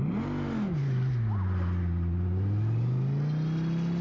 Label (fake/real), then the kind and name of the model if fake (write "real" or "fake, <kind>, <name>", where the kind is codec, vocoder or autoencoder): real